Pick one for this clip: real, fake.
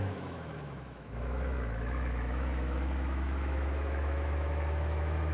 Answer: fake